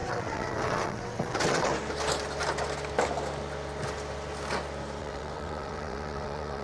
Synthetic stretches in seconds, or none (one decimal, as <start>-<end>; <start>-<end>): 0.0-1.7; 5.0-6.6